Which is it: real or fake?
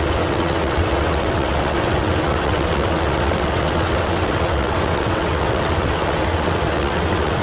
fake